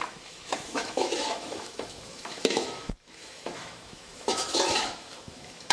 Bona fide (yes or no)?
no